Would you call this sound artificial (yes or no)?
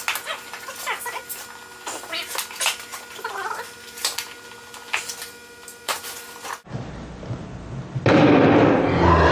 no